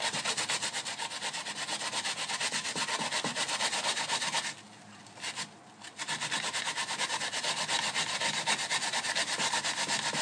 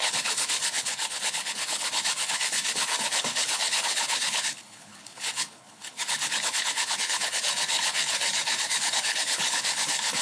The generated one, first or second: second